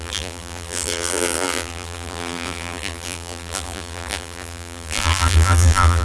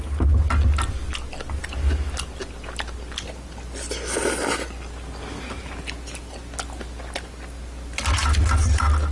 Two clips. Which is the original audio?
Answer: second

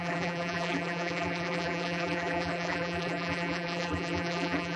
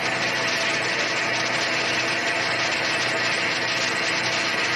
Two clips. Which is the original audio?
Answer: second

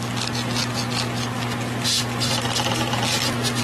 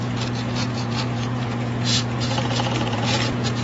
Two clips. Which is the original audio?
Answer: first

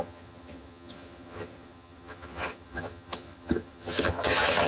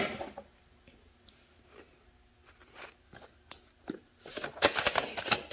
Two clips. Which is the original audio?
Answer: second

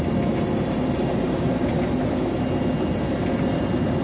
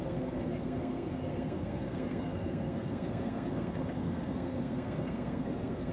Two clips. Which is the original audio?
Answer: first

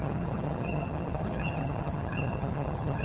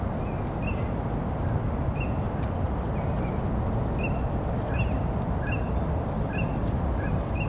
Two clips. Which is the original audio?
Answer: second